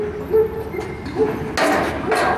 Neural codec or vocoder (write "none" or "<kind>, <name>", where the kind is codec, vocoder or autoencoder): none